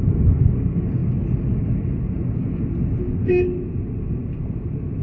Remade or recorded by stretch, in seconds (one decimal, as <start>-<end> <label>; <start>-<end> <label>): 0.0-5.0 recorded